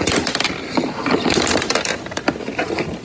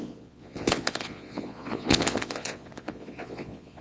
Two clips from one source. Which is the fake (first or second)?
second